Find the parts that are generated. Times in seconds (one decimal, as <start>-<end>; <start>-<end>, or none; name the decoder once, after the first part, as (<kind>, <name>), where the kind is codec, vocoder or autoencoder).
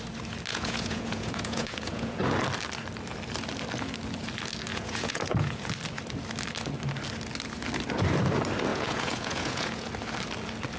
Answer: 0.5-2.2 (vocoder, Vocos); 4.7-5.7; 8.7-9.9